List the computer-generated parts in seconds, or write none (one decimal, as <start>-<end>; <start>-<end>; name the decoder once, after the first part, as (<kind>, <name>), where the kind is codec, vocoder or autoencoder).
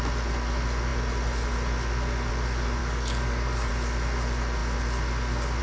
2.8-3.7 (codec, DAC)